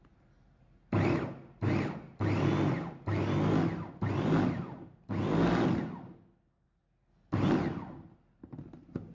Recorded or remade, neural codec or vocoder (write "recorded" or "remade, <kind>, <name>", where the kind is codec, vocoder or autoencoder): recorded